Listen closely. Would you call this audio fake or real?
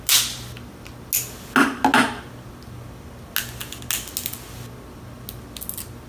real